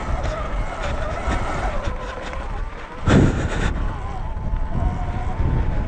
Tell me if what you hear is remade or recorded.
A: recorded